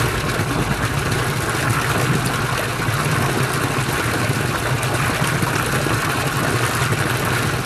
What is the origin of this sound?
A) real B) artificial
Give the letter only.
A